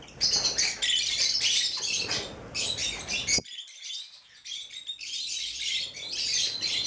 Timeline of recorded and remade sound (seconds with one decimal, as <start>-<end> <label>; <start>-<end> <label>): 0.0-2.8 remade; 2.8-3.4 recorded; 3.4-6.9 remade

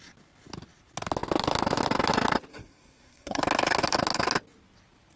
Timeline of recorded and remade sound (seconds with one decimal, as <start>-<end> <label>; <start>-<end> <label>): 0.0-2.5 recorded; 2.5-3.4 remade; 3.4-5.2 recorded

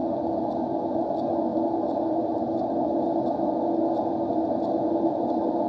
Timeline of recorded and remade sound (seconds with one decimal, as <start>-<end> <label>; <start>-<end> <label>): 0.0-5.7 recorded

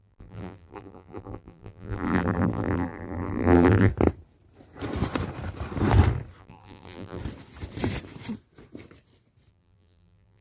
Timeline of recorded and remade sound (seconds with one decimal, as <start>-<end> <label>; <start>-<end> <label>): 0.0-3.9 remade; 3.9-6.4 recorded; 6.4-7.2 remade; 7.2-9.5 recorded; 9.5-10.4 remade